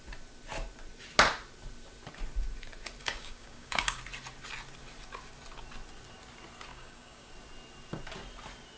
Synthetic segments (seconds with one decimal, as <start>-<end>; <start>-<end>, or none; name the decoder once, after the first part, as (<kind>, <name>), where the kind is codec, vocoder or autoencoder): 3.0-4.0 (codec, DAC); 6.7-7.3